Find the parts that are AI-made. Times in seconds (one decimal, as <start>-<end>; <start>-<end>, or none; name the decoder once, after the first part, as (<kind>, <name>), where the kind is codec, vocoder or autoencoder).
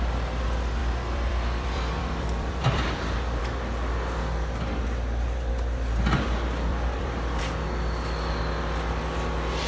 0.8-3.4 (vocoder, BigVGAN v2); 6.7-7.4